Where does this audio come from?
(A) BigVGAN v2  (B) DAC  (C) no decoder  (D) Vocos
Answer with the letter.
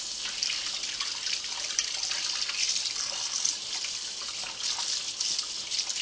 C